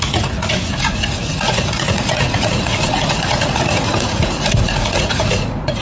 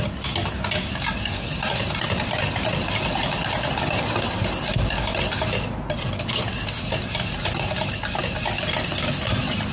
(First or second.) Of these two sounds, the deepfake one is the first